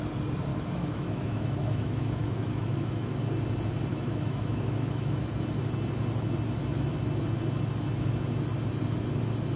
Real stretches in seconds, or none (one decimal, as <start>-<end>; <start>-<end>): 0.0-0.5; 3.2-3.9; 5.2-9.6